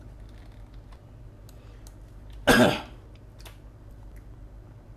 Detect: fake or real real